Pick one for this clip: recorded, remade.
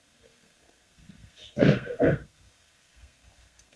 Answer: remade